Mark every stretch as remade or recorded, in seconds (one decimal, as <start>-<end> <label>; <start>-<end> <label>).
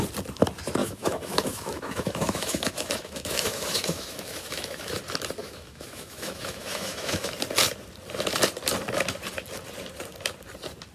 0.0-0.8 recorded; 0.8-5.0 remade; 5.0-5.4 recorded; 5.4-7.3 remade; 7.3-10.9 recorded